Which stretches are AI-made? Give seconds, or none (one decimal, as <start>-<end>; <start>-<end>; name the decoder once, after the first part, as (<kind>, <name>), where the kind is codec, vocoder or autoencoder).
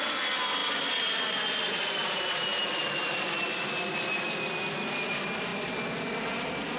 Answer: none